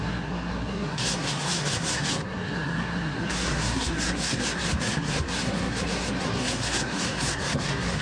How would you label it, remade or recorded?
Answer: remade